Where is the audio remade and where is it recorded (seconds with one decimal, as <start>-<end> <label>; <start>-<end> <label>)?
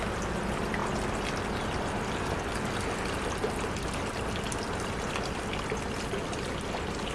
0.0-7.1 recorded